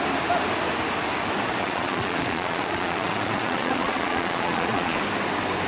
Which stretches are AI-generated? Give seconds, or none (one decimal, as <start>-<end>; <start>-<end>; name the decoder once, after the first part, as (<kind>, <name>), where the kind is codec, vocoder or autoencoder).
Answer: 1.6-5.0 (vocoder, Vocos)